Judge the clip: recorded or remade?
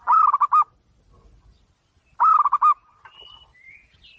recorded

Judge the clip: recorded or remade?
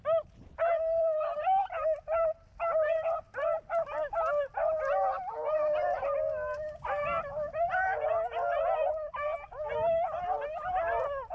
recorded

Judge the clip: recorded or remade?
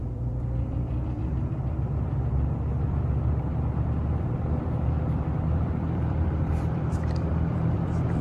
remade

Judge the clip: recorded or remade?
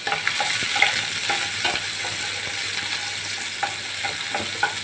recorded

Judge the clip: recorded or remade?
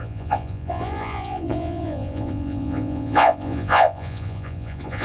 remade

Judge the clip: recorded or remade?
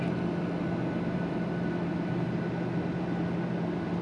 recorded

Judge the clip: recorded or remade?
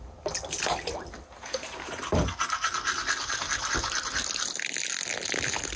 recorded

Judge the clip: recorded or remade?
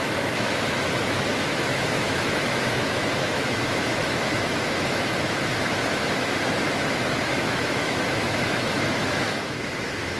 remade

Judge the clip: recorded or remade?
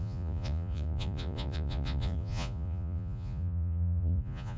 remade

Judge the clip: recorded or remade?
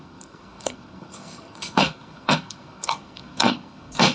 remade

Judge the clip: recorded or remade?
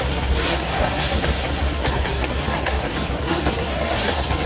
remade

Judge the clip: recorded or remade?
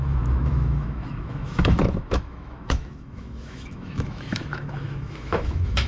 remade